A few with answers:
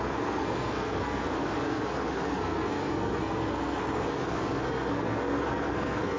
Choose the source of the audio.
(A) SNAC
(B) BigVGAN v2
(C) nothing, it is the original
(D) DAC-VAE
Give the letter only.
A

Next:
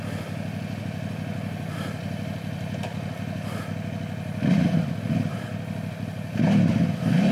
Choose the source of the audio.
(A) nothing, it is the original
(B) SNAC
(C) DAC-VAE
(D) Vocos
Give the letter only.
A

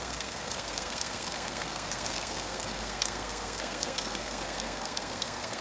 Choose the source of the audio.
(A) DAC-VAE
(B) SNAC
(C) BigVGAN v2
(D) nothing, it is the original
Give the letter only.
B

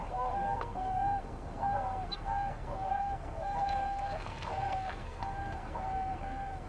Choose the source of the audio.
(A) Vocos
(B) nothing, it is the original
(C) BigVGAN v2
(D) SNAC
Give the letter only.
D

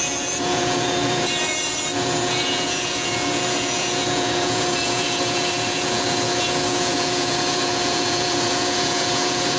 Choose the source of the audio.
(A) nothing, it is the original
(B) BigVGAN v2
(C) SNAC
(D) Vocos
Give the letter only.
D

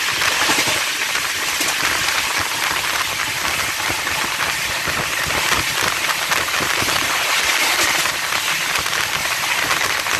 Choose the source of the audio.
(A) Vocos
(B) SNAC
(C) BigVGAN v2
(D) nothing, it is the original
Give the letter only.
D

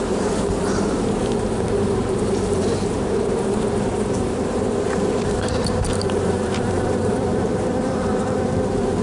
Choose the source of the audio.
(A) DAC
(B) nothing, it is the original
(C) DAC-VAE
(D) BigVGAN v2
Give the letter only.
D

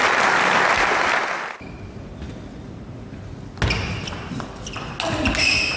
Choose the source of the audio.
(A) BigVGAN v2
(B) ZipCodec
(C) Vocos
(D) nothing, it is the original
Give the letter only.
D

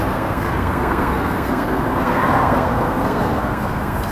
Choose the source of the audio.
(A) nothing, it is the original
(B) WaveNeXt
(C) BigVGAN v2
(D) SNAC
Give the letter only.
D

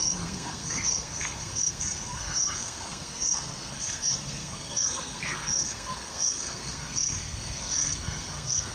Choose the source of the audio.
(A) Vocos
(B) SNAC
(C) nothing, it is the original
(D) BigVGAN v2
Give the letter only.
B